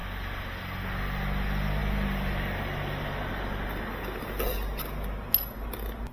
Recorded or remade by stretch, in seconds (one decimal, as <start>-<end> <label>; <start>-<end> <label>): 0.0-6.1 recorded

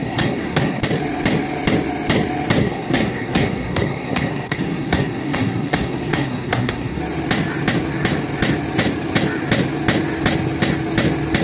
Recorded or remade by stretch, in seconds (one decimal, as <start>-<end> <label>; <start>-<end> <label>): 0.0-0.8 remade; 0.8-2.6 recorded; 2.6-7.0 remade; 7.0-11.4 recorded

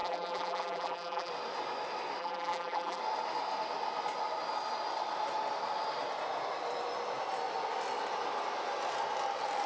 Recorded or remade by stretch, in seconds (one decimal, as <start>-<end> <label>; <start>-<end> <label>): 0.0-1.3 remade; 1.3-2.2 recorded; 2.2-3.0 remade; 3.0-9.7 recorded